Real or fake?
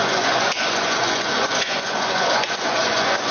fake